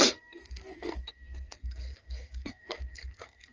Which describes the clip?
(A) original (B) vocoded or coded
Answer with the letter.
B